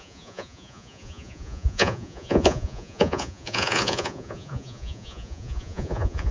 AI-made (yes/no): yes